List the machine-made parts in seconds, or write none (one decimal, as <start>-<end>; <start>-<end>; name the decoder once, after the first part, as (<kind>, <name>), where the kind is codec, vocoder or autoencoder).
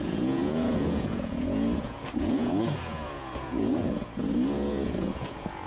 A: 0.0-5.7 (vocoder, Vocos)